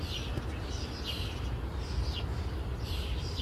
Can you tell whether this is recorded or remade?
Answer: recorded